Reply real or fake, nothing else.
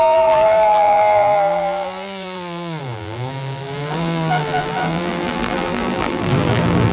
fake